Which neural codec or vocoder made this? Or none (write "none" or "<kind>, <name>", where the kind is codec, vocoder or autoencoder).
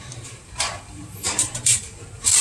vocoder, BigVGAN v2